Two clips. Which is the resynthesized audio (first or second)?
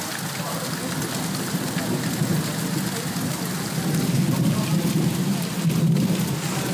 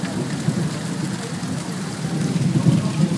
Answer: second